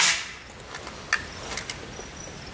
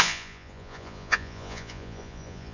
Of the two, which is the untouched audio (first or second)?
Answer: first